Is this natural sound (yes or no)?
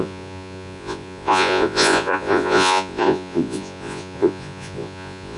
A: no